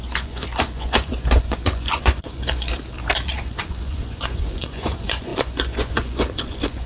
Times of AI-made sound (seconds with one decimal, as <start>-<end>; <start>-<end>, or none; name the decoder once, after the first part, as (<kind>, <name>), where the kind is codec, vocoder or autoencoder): 0.0-2.7 (vocoder, Vocos); 3.3-6.9